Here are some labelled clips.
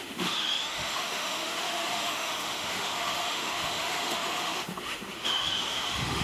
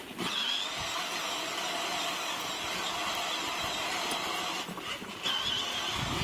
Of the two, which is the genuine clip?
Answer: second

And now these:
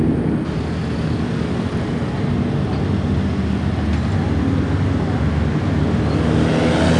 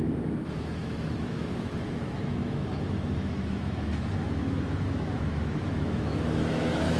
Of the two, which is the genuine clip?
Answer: first